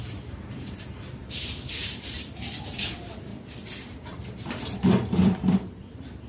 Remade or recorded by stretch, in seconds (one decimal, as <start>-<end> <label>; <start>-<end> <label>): 0.0-3.3 remade; 3.3-4.1 recorded; 4.1-6.3 remade